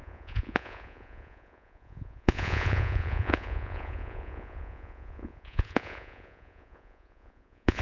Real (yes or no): no